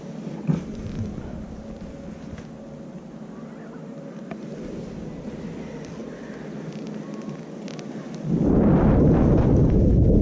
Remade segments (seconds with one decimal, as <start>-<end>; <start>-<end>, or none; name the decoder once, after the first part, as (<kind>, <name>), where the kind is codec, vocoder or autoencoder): none